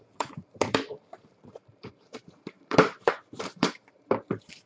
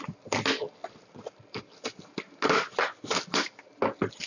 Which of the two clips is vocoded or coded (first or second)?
first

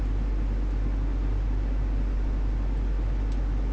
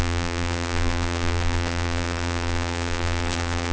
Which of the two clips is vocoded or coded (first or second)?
second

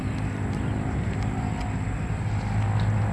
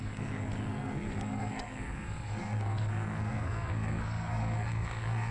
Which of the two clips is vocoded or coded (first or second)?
second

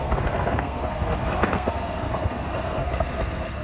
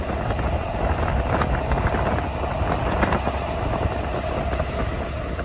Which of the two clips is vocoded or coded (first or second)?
first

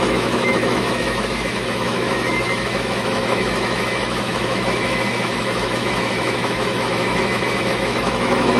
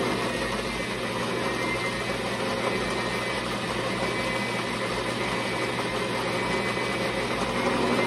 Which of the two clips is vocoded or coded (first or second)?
first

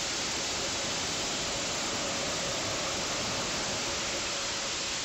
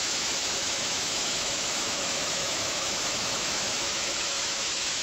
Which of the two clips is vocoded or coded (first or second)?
second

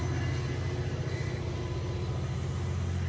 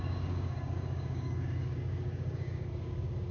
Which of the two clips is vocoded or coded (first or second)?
second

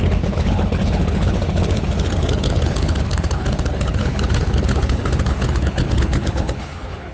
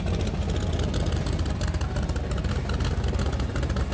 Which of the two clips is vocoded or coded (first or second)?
first